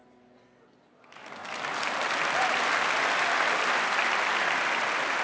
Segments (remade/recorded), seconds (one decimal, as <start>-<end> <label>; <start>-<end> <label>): 0.0-5.2 recorded